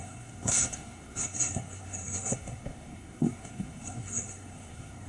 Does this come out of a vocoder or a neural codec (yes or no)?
yes